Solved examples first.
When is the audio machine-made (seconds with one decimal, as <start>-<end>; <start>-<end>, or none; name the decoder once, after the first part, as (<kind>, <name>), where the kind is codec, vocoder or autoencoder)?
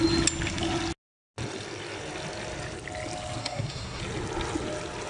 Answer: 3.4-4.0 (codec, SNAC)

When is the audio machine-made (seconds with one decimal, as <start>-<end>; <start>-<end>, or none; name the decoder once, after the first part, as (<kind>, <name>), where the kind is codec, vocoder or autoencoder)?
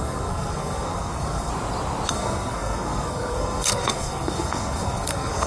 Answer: 0.0-1.5 (codec, SNAC); 2.1-5.5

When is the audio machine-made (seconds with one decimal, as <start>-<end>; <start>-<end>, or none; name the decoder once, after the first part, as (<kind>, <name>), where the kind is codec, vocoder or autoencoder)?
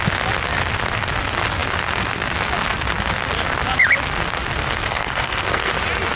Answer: 4.6-5.7 (codec, SNAC)